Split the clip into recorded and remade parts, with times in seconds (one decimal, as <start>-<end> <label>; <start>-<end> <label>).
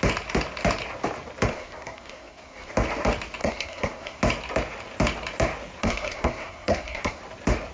0.0-1.5 recorded; 1.5-2.7 remade; 2.7-3.4 recorded; 3.4-4.2 remade; 4.2-5.8 recorded; 5.8-7.2 remade; 7.2-7.7 recorded